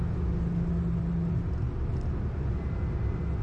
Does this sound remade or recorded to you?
recorded